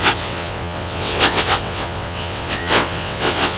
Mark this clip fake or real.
fake